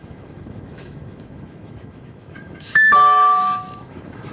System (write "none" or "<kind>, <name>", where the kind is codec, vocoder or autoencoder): autoencoder, DAC-VAE